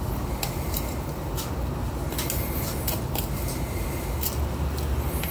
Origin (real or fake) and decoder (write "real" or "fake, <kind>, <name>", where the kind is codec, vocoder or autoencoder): real